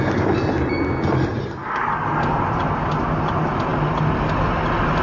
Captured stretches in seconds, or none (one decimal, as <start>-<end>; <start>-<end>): 0.0-5.0